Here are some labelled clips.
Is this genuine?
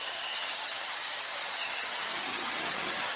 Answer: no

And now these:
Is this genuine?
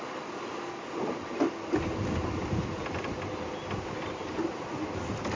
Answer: yes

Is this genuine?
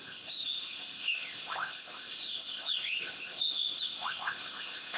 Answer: no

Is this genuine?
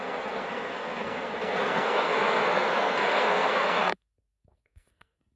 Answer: no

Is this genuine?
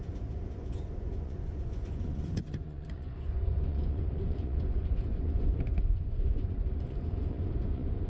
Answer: no